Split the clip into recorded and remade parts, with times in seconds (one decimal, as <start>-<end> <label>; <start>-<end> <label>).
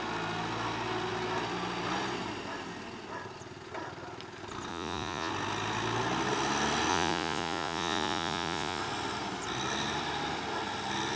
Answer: 0.0-4.7 recorded; 4.7-5.3 remade; 5.3-6.9 recorded; 6.9-8.8 remade; 8.8-11.2 recorded